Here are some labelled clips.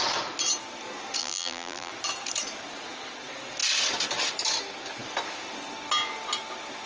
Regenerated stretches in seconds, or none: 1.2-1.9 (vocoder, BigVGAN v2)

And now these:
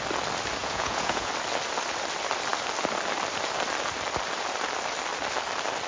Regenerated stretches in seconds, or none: 0.6-1.3 (vocoder, Vocos)

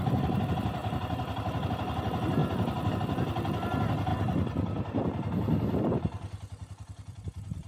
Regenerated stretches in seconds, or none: none

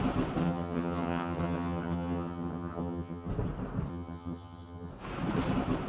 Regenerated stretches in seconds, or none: 0.4-3.3 (vocoder, HiFi-GAN); 3.9-4.9

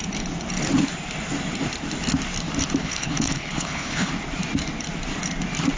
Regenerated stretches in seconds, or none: 2.8-4.1 (codec, HILCodec)

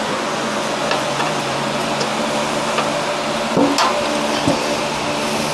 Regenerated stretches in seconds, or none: 0.0-2.1 (vocoder, Vocos)

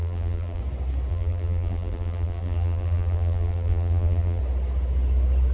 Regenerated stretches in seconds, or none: 0.0-0.6 (vocoder, BigVGAN v2); 1.1-4.4